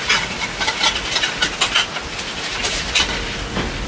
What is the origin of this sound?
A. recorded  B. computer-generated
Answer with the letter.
A